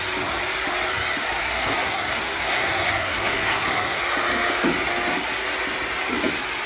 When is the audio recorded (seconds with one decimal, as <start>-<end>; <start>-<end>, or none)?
0.0-1.4; 4.0-6.7